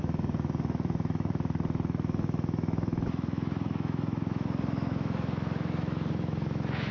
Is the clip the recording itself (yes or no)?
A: no